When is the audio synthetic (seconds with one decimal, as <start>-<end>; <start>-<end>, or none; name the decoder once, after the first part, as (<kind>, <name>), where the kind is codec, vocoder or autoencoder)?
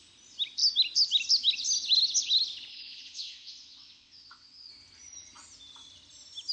2.7-4.7 (vocoder, WaveNeXt)